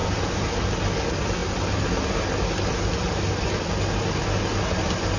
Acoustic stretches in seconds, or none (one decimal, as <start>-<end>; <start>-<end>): 0.0-5.2